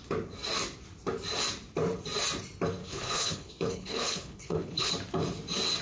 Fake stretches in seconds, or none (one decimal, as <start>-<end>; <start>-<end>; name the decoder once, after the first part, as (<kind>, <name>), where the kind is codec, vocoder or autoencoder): 2.8-4.9 (codec, HILCodec)